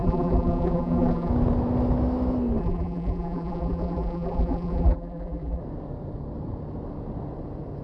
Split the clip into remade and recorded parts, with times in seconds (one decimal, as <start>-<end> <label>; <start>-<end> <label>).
0.0-1.3 remade; 1.3-2.6 recorded; 2.6-5.6 remade; 5.6-7.8 recorded